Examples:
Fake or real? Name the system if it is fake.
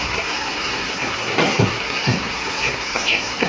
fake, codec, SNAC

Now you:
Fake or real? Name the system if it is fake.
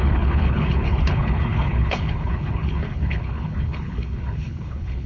fake, codec, HILCodec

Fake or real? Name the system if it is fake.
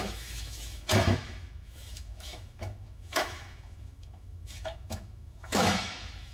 fake, autoencoder, DAC-VAE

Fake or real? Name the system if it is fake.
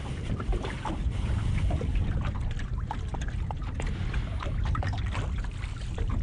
real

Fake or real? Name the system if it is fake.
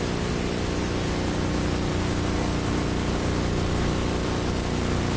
real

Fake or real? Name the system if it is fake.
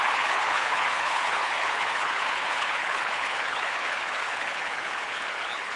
fake, codec, HILCodec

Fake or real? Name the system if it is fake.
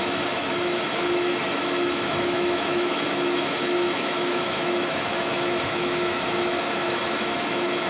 fake, autoencoder, DAC-VAE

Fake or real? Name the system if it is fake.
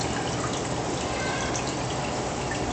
real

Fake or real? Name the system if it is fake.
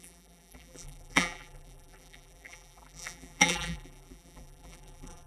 fake, vocoder, BigVGAN v2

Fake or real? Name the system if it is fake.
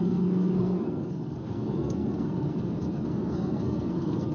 fake, codec, SNAC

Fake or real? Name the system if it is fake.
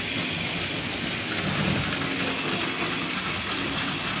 real